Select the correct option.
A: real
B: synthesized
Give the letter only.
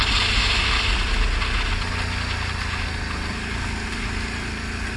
A